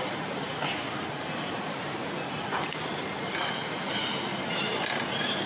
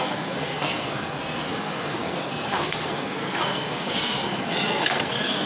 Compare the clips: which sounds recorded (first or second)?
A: first